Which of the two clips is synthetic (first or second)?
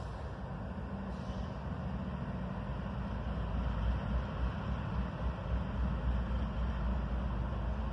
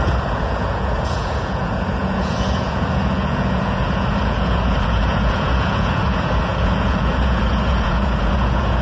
second